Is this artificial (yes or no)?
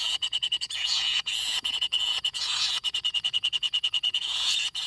yes